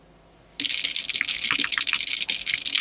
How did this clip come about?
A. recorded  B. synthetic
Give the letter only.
A